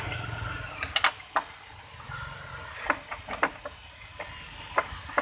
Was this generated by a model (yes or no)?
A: no